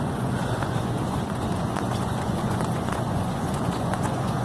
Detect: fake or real fake